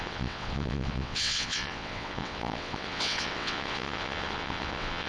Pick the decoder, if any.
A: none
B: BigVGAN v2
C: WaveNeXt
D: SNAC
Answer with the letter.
C